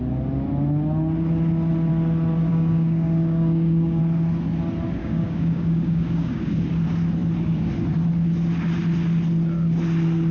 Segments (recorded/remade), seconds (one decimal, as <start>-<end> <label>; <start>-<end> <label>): 0.0-2.5 recorded; 2.5-4.0 remade; 4.0-5.0 recorded; 5.0-6.5 remade; 6.5-10.3 recorded